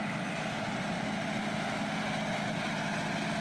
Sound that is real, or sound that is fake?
real